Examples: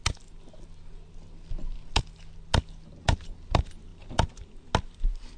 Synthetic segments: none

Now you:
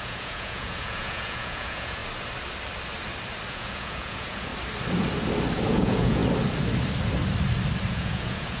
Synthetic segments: 0.0-2.0; 3.5-4.5; 5.7-6.2; 7.9-8.6

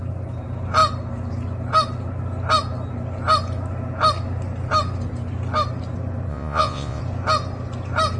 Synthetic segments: 6.3-7.0

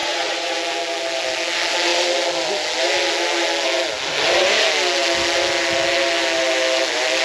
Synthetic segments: 0.0-0.5

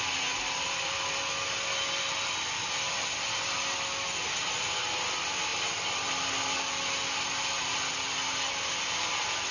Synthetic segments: none

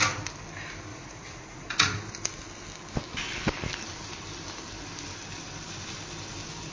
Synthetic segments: 0.9-2.1